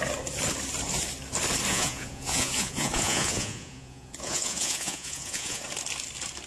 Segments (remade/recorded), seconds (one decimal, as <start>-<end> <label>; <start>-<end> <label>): 0.0-1.7 recorded; 1.7-5.6 remade; 5.6-6.5 recorded